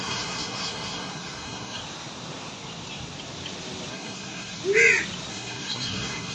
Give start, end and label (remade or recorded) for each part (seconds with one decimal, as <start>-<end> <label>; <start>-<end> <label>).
0.0-1.8 remade; 1.8-3.9 recorded; 3.9-4.6 remade; 4.6-5.3 recorded; 5.3-6.3 remade